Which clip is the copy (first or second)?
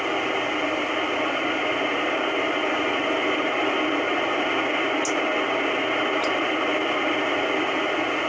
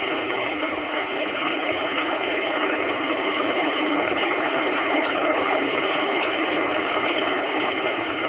second